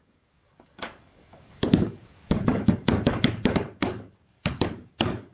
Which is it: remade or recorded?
remade